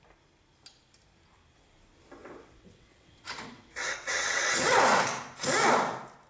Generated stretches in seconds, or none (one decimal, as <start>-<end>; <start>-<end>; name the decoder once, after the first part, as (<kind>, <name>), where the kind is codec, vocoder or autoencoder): 2.2-4.8 (vocoder, WaveNeXt)